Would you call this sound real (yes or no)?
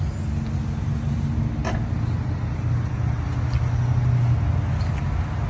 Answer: yes